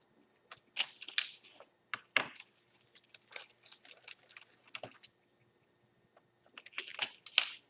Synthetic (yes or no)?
no